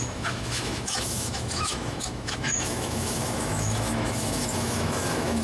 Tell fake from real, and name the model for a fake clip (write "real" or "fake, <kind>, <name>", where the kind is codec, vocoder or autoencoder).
fake, autoencoder, DAC-VAE